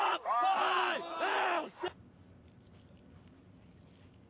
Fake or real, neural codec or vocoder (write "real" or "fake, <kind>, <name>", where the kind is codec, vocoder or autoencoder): real